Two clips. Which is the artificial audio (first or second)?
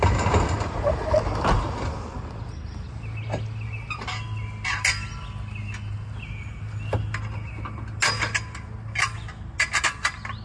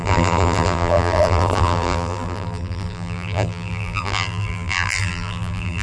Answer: second